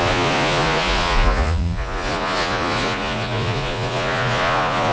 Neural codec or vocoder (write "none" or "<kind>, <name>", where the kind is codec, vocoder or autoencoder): vocoder, Vocos